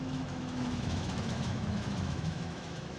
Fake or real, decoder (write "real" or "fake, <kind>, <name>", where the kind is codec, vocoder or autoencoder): fake, autoencoder, DAC-VAE